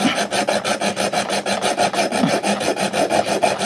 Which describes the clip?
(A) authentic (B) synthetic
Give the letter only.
A